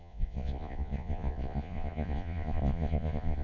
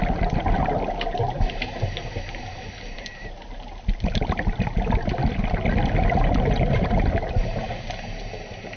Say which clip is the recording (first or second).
second